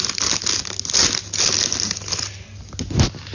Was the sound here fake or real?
real